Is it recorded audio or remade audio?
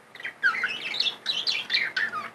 recorded